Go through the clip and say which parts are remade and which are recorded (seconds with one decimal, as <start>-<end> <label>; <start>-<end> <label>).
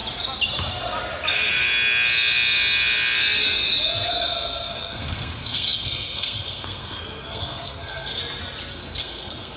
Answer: 0.0-4.1 recorded; 4.1-8.2 remade; 8.2-8.7 recorded; 8.7-9.6 remade